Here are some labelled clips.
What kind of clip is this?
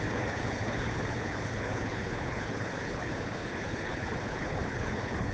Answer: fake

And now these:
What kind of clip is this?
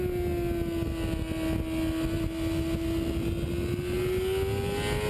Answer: real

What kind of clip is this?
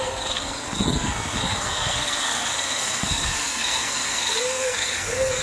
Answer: fake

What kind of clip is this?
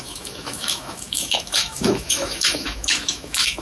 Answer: fake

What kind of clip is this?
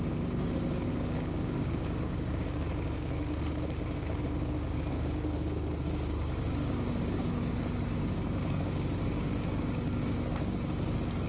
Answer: fake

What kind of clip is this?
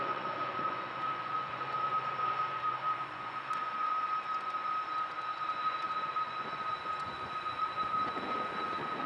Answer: fake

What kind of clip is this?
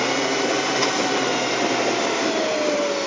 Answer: real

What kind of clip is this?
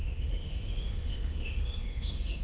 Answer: fake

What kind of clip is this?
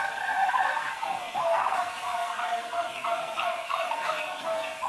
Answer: fake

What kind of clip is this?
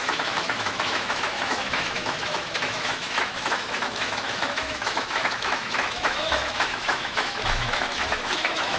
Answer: fake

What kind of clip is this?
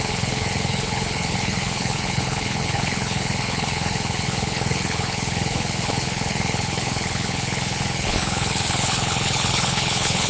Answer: fake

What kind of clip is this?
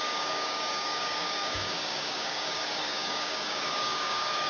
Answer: fake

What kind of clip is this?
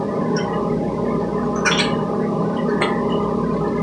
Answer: real